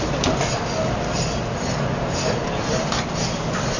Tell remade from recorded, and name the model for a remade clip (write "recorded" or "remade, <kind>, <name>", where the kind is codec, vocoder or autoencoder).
recorded